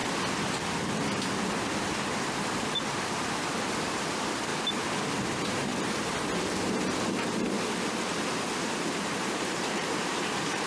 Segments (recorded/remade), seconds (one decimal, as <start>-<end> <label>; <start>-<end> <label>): 0.0-4.1 recorded; 4.1-4.5 remade; 4.5-5.1 recorded; 5.1-5.7 remade; 5.7-9.0 recorded; 9.0-10.7 remade